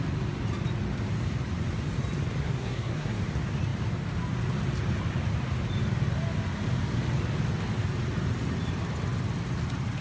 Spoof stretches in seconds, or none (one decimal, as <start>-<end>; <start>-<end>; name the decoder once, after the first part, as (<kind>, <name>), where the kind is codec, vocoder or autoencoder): 2.4-3.2 (codec, SNAC)